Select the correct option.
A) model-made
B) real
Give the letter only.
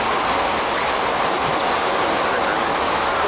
B